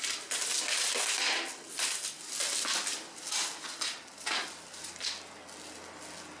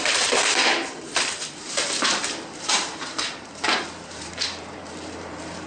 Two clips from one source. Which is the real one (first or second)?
first